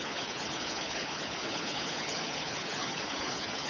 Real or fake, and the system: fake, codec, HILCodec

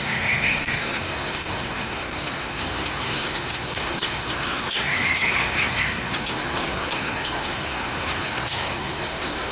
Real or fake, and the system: fake, codec, SNAC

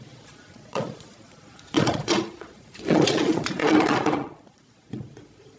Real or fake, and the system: fake, vocoder, Vocos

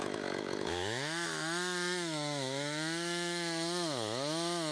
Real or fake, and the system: fake, autoencoder, DAC-VAE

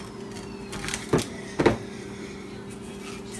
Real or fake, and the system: real